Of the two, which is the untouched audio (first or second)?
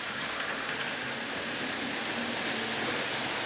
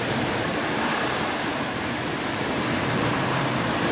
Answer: first